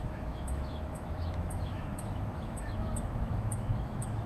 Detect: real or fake fake